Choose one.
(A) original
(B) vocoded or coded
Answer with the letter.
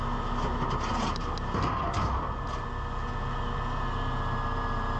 A